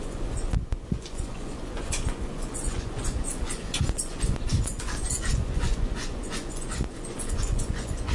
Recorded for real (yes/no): no